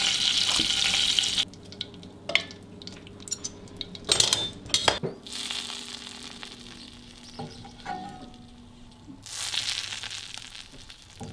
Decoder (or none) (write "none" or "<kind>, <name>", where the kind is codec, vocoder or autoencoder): none